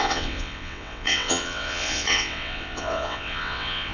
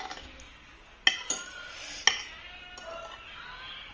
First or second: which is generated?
first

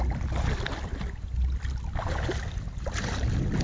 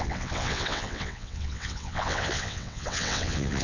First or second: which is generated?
second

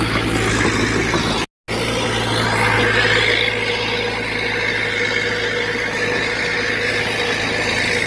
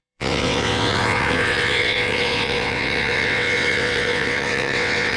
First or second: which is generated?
second